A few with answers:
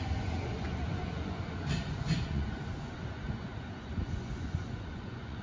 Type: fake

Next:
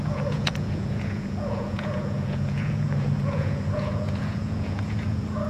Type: fake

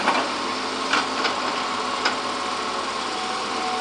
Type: real